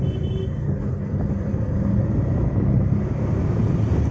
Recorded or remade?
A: recorded